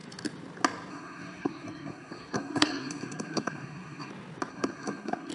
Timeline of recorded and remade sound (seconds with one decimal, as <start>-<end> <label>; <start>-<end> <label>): 0.0-0.9 recorded; 0.9-4.1 remade; 4.1-4.5 recorded; 4.5-5.3 remade